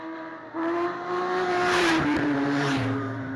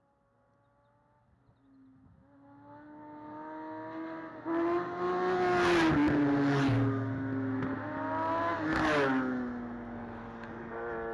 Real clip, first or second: second